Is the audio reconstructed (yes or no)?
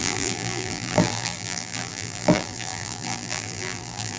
yes